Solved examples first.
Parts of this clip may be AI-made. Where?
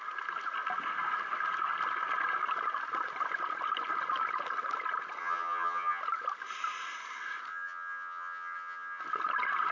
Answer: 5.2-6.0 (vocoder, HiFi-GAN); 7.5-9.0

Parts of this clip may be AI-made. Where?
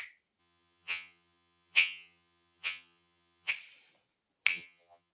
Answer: 0.4-3.5 (vocoder, HiFi-GAN); 4.5-5.1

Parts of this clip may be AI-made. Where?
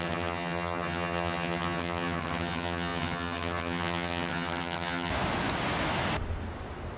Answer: 0.0-5.1 (vocoder, HiFi-GAN)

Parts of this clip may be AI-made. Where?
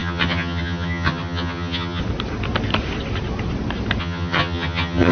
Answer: 0.0-2.0 (vocoder, HiFi-GAN); 4.0-5.1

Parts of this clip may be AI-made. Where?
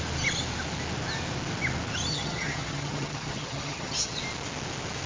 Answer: 2.1-4.2 (vocoder, HiFi-GAN)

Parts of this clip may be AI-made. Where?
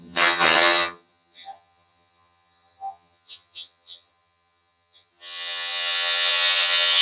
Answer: 0.0-7.0 (vocoder, HiFi-GAN)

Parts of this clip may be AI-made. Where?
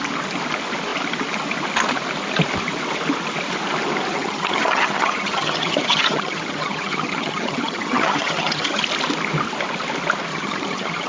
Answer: 4.1-8.8 (vocoder, HiFi-GAN); 10.3-11.1